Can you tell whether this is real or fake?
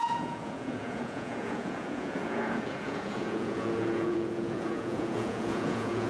fake